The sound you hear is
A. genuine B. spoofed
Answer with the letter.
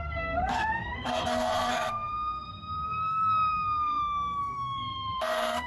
B